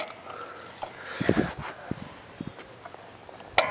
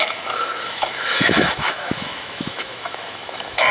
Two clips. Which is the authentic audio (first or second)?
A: first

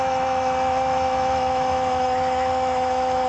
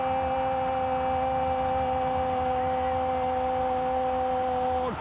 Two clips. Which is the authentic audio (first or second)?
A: second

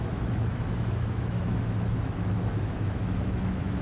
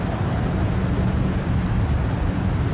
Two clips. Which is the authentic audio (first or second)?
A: second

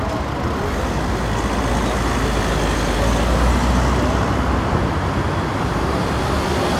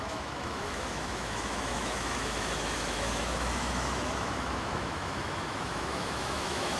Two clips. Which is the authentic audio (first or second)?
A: first